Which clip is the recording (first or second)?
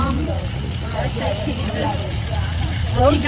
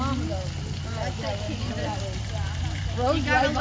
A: second